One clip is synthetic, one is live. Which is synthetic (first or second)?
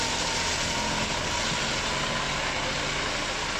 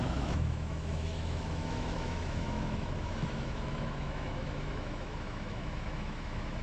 second